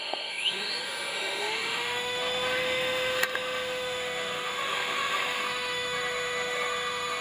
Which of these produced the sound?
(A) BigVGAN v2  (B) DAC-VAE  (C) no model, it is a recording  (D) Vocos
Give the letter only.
B